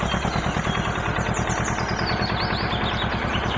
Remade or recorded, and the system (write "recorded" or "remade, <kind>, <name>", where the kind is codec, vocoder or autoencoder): recorded